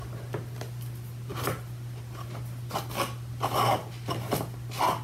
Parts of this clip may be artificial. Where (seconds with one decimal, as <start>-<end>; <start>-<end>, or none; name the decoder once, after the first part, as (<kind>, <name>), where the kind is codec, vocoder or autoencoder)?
none